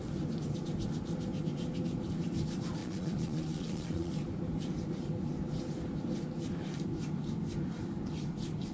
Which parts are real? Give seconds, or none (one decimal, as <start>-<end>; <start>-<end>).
0.0-2.8; 4.1-8.7